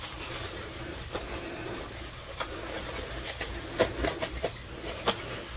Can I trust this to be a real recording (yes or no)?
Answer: yes